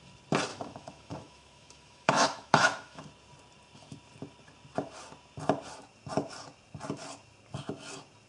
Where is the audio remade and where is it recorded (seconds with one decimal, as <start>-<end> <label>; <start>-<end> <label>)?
0.0-0.5 recorded; 0.5-3.0 remade; 3.0-8.3 recorded